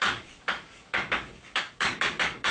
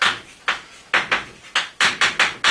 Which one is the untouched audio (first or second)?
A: second